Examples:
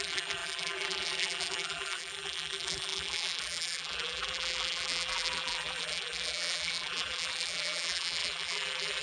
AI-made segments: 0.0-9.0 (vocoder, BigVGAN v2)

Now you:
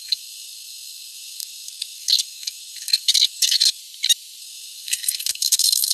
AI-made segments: 0.0-3.8 (codec, SNAC); 4.4-5.9

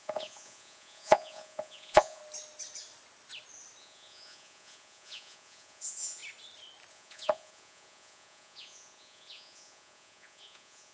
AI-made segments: 0.0-2.2 (vocoder, Vocos); 3.8-6.2; 6.9-10.9

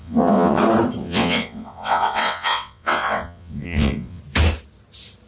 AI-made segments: 0.0-0.6 (vocoder, WaveNeXt); 1.0-4.2

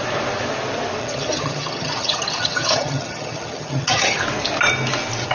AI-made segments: 1.0-4.2 (vocoder, HiFi-GAN)

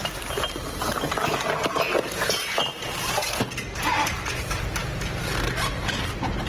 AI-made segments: 0.0-6.5 (vocoder, BigVGAN v2)

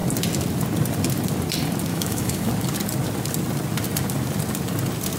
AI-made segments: 1.9-2.5 (autoencoder, DAC-VAE)